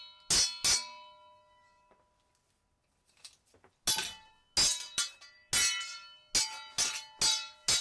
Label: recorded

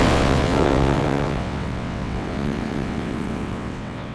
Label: remade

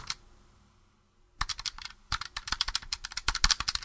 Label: recorded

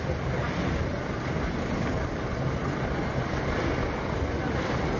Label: recorded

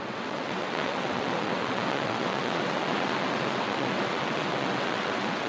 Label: remade